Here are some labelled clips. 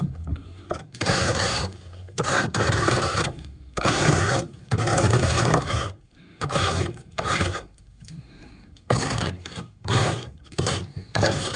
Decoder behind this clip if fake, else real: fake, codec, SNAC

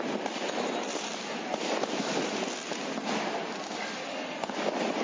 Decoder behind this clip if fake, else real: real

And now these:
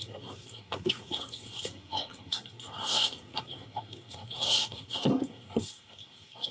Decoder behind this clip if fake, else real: fake, codec, SNAC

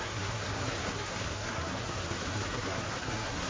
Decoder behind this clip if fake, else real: fake, codec, SNAC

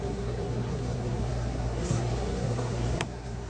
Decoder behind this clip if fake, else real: fake, codec, SNAC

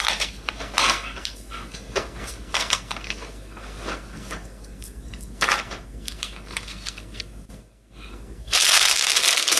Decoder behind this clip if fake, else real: fake, codec, SNAC